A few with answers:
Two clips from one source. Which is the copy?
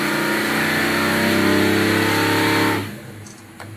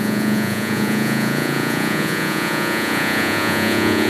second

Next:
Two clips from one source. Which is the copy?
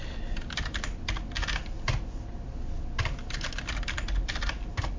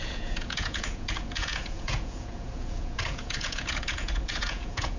second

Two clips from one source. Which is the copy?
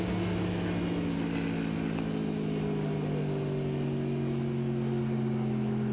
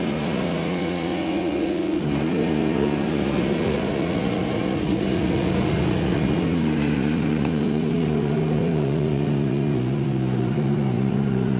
second